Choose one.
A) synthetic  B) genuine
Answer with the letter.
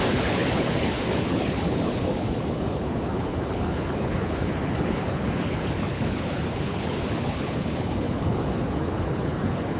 A